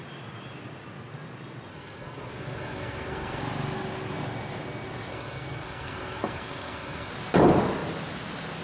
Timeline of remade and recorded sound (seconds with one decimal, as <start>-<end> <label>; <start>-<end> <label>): 0.0-1.7 recorded; 1.7-3.4 remade; 3.4-5.1 recorded; 5.1-7.1 remade; 7.1-8.6 recorded